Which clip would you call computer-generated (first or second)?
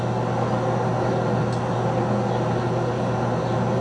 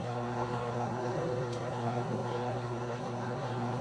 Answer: second